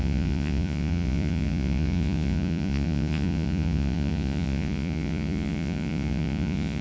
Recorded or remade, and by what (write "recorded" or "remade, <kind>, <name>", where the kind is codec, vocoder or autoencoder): remade, vocoder, Vocos